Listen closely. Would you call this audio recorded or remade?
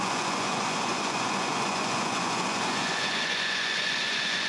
remade